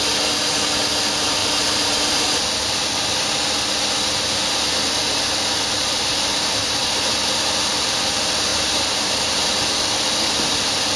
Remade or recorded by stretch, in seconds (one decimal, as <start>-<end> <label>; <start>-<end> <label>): 0.0-1.4 recorded; 1.4-3.3 remade; 3.3-5.8 recorded; 5.8-6.8 remade; 6.8-8.5 recorded; 8.5-9.5 remade; 9.5-11.0 recorded